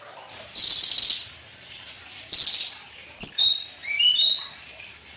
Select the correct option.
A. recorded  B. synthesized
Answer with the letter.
A